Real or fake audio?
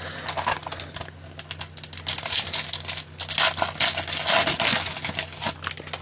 real